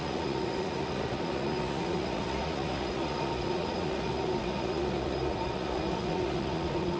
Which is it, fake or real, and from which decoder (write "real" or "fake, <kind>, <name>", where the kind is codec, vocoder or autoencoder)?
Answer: fake, vocoder, Vocos